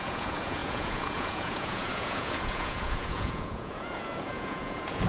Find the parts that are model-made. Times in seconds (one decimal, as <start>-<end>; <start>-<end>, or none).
0.0-5.1